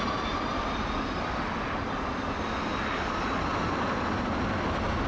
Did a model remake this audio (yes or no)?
no